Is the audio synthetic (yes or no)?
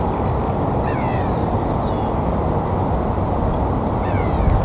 no